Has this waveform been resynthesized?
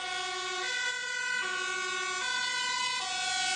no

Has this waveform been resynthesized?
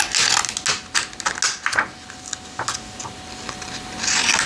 no